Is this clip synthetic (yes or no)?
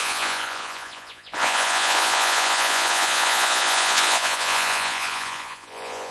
yes